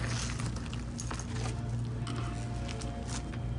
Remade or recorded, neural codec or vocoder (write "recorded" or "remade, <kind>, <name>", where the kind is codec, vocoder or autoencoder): recorded